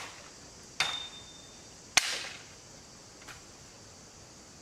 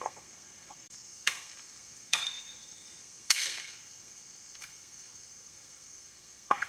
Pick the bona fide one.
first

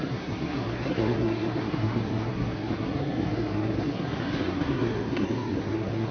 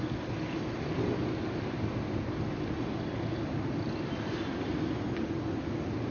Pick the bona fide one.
second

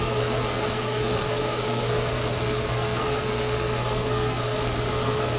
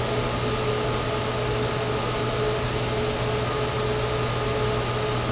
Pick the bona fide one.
second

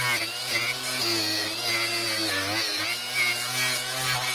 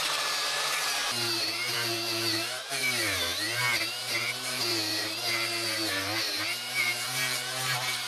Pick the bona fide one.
first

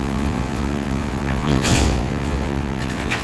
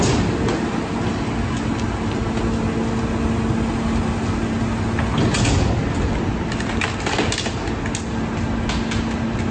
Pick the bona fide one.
second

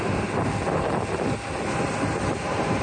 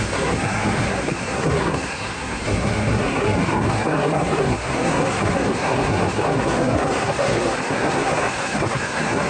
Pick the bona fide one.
first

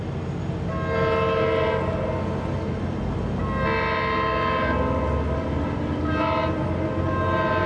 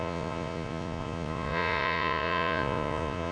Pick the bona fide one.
first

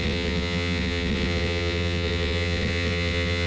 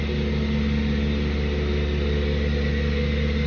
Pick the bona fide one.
second